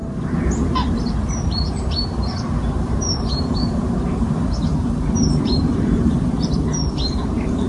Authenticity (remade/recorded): remade